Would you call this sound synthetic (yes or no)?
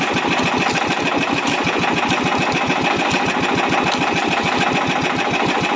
no